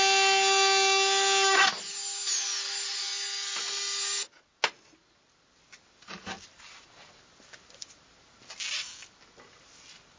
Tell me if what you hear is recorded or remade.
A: recorded